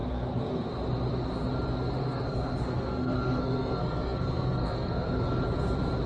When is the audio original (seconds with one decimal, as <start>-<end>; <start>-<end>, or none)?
0.7-2.0; 5.4-6.1